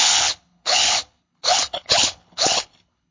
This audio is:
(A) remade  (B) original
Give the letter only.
A